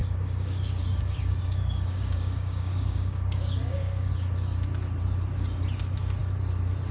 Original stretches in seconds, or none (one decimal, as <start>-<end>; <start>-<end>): 4.1-6.9